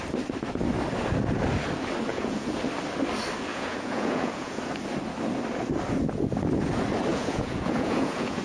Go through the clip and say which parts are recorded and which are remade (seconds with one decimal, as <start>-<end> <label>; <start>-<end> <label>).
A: 0.0-2.1 recorded; 2.1-2.6 remade; 2.6-3.5 recorded; 3.5-4.6 remade; 4.6-7.1 recorded; 7.1-8.4 remade